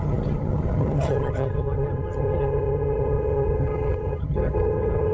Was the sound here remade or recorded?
remade